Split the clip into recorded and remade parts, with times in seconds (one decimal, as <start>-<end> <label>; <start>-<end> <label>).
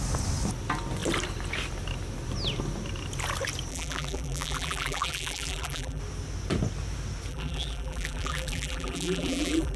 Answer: 0.0-3.7 recorded; 3.7-6.0 remade; 6.0-7.3 recorded; 7.3-9.8 remade